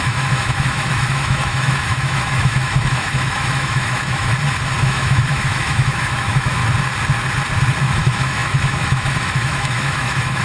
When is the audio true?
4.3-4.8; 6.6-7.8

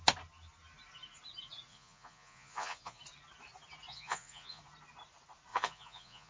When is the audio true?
0.0-1.7; 3.0-3.9; 4.6-5.5

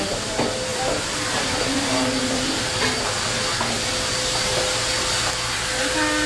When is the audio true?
0.0-0.7; 1.6-6.3